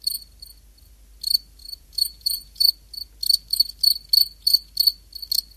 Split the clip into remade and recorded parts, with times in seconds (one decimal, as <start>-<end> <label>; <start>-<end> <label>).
0.0-1.6 recorded; 1.6-2.7 remade; 2.7-5.6 recorded